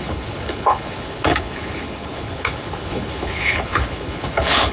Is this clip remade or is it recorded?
remade